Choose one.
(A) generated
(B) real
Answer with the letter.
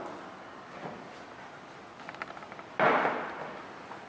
B